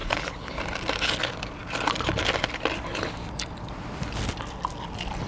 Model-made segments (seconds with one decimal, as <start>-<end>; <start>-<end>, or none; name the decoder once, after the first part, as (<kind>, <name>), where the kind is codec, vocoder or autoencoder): 0.0-0.6 (codec, HILCodec)